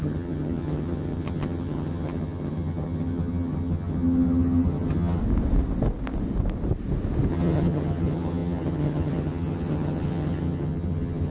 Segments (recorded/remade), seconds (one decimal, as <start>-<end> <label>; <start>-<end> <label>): 0.0-5.2 remade; 5.2-7.3 recorded; 7.3-11.3 remade

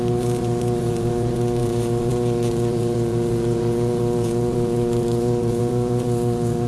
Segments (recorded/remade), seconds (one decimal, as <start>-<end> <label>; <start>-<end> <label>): 0.0-6.7 remade

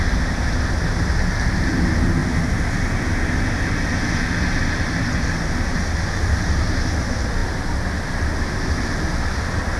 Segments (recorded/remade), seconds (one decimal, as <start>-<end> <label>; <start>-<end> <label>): 0.0-9.8 recorded